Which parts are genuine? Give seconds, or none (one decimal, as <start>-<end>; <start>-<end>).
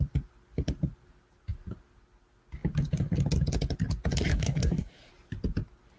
0.0-4.3; 5.1-6.0